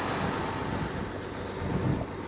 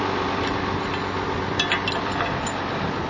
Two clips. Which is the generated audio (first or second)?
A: second